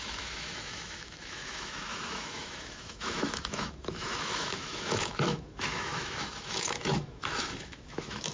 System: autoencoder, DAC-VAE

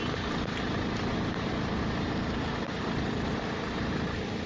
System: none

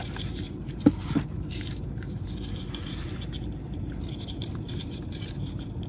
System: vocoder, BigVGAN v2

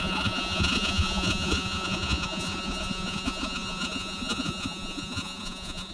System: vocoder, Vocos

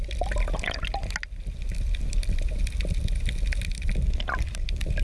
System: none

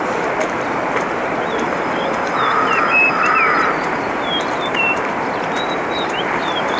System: vocoder, BigVGAN v2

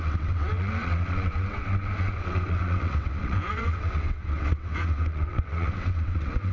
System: vocoder, WaveNeXt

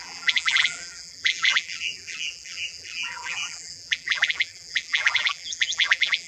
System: vocoder, BigVGAN v2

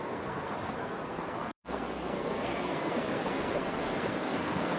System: codec, SNAC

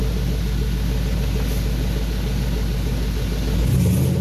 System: none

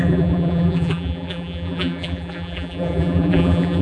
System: vocoder, BigVGAN v2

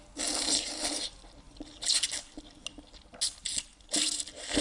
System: none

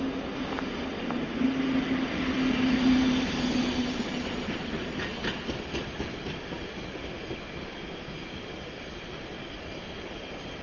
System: none